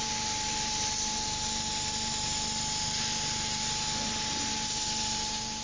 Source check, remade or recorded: recorded